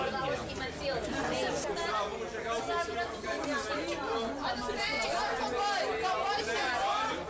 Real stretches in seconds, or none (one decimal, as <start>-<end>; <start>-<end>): 0.0-7.3